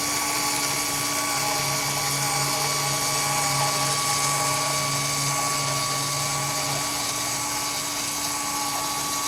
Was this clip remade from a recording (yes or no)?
no